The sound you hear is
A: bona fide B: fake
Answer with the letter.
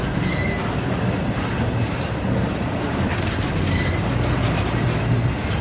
A